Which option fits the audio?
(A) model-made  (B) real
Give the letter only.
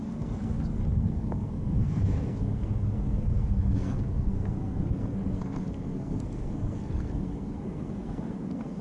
A